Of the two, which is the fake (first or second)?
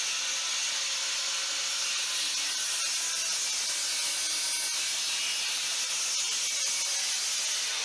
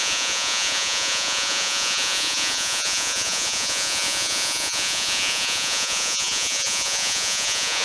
second